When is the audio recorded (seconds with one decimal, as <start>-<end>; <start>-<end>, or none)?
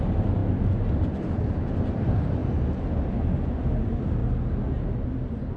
0.0-5.6